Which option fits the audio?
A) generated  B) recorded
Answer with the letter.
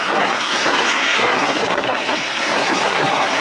A